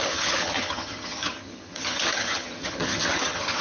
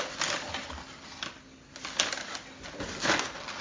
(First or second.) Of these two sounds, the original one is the second